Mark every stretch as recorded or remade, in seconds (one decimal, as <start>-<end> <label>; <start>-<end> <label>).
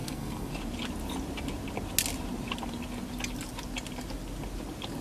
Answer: 0.0-0.5 remade; 0.5-5.0 recorded